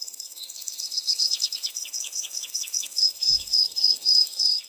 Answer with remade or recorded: remade